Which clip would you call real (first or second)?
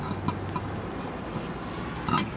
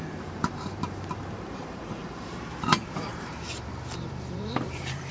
first